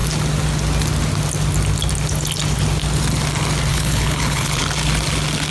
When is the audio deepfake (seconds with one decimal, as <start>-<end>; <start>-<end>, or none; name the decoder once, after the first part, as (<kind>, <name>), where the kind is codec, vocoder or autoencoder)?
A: 3.7-4.6 (codec, HILCodec)